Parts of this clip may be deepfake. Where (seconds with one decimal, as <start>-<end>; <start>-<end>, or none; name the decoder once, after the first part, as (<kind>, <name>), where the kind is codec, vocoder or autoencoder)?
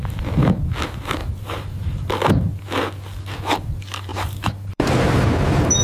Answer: 1.2-2.1 (vocoder, BigVGAN v2); 4.1-5.2